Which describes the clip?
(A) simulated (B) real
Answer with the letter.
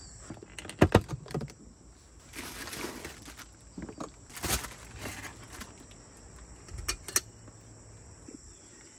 B